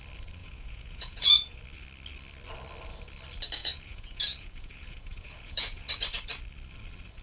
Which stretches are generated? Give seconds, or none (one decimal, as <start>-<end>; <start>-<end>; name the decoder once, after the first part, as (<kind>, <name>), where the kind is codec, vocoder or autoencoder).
0.4-1.6 (vocoder, Vocos); 3.6-5.9